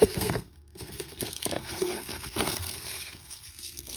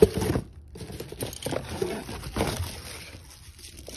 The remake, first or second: first